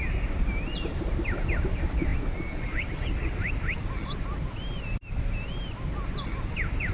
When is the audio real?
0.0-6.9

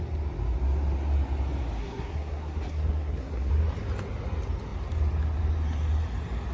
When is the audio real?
0.0-1.8; 3.5-6.5